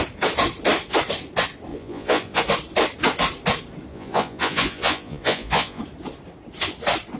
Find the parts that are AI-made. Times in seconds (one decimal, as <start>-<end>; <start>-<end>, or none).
1.7-2.4; 3.9-5.8